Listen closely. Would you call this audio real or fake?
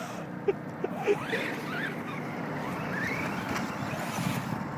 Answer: real